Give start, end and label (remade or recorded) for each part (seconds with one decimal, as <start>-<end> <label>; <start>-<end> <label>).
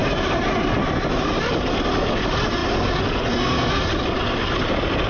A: 0.0-5.1 recorded